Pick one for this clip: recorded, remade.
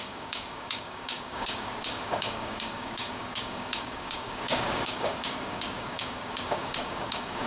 remade